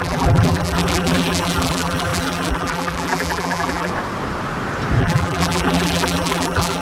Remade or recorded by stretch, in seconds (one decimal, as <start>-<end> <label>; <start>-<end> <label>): 0.0-3.9 remade; 3.9-5.0 recorded; 5.0-6.8 remade